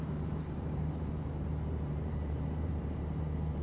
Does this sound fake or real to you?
fake